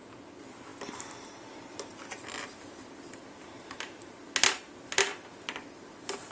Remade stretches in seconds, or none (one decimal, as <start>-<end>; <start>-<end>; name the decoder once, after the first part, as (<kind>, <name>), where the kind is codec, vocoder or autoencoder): none

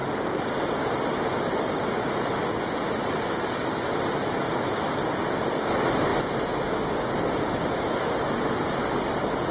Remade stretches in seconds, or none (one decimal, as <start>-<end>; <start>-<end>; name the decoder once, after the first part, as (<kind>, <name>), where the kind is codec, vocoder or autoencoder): none

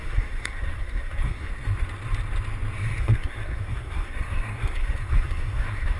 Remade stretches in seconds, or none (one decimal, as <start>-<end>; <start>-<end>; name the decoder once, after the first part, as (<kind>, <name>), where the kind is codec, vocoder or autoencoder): 0.0-1.5 (codec, SNAC); 3.0-6.0